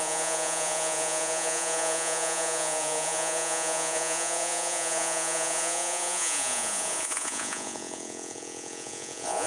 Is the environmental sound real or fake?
fake